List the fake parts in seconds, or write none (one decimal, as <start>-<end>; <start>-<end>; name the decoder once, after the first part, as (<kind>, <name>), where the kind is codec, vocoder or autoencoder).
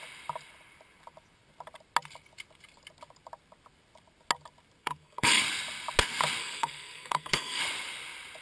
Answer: 4.8-5.4 (codec, SNAC); 6.4-7.6